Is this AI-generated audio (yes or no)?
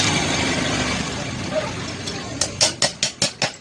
no